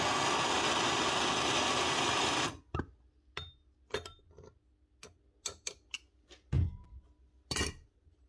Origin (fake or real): real